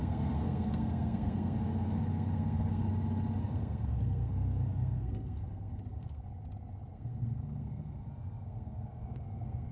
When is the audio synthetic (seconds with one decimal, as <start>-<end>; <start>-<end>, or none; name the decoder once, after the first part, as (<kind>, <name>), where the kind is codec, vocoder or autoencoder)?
0.0-2.9 (codec, SNAC); 3.4-6.2; 6.9-9.7